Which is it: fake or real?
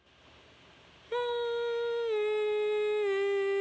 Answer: real